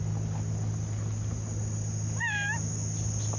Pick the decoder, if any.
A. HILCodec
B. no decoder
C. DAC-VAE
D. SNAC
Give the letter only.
B